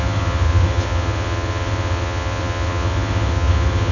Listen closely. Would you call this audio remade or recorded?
remade